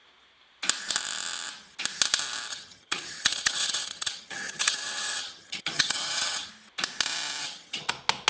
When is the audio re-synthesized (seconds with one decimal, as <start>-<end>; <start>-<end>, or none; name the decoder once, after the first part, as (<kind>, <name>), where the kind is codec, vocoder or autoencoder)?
2.5-6.5 (vocoder, HiFi-GAN); 7.4-7.9